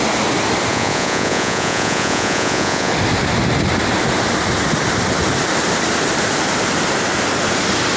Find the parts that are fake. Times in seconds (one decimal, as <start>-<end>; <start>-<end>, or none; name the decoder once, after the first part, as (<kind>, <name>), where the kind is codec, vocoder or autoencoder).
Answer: 0.7-2.9 (vocoder, Vocos)